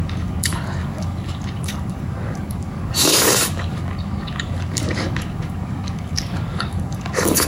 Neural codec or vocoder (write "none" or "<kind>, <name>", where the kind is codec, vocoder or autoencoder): codec, DAC